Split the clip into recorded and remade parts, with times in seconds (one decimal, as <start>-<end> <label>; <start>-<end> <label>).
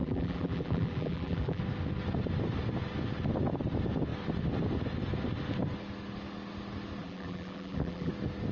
0.0-1.6 remade; 1.6-7.0 recorded; 7.0-8.1 remade; 8.1-8.5 recorded